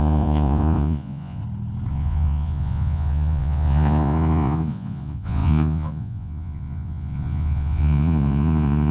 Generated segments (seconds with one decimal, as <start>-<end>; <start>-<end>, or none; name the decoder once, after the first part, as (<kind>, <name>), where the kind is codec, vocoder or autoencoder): 0.0-1.4 (vocoder, Vocos); 1.9-8.9

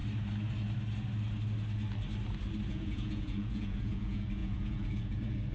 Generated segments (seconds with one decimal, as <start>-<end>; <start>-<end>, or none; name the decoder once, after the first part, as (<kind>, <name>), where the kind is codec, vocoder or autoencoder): 2.7-5.5 (vocoder, Vocos)

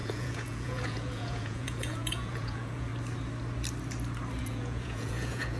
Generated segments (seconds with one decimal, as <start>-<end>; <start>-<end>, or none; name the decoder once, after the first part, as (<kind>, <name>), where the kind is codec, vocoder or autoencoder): 0.0-2.9 (vocoder, Vocos); 4.4-5.6

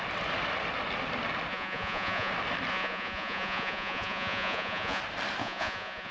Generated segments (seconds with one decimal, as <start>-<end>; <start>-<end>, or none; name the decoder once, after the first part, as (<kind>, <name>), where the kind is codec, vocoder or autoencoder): 1.5-2.3 (vocoder, Vocos); 2.7-5.0; 5.4-6.1

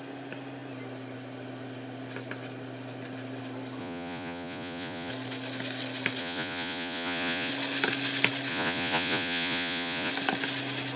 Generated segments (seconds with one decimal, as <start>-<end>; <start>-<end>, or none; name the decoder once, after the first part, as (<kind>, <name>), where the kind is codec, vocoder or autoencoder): 3.8-5.1 (vocoder, Vocos); 6.2-7.5; 8.5-10.1

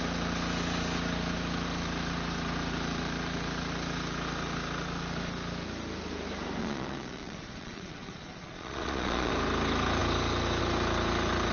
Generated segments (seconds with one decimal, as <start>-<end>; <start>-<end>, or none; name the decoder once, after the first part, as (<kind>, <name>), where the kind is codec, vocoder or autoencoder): 6.6-9.3 (vocoder, Vocos)

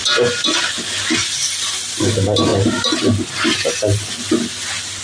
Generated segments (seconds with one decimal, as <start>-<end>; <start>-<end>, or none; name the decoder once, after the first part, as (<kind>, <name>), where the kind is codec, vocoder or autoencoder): none